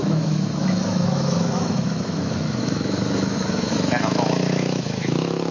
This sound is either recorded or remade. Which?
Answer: remade